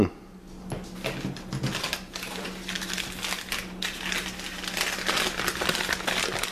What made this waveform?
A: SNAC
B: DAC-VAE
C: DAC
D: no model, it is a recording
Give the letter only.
D